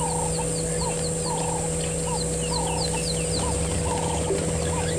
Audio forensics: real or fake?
real